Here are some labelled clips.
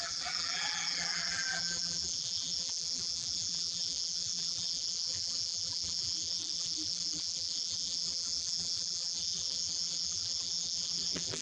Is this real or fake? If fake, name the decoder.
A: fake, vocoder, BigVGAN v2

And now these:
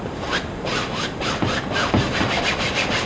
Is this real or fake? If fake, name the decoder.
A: real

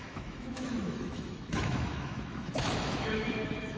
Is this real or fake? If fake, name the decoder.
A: fake, autoencoder, DAC-VAE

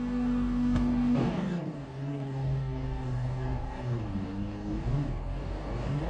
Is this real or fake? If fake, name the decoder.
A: fake, codec, DAC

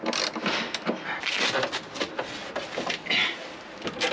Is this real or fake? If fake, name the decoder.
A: real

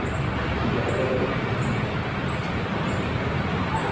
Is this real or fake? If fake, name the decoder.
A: real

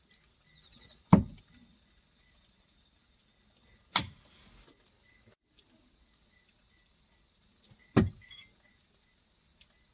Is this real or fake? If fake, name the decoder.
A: real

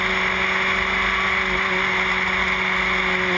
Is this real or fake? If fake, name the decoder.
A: real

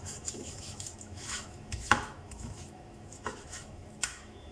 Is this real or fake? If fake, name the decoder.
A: fake, autoencoder, DAC-VAE